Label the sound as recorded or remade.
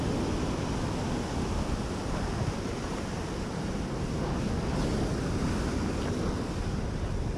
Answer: recorded